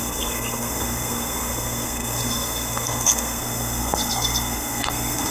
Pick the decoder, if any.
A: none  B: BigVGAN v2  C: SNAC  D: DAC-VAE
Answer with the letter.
C